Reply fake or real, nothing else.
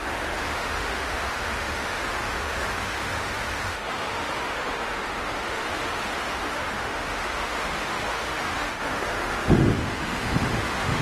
fake